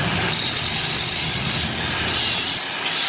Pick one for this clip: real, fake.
real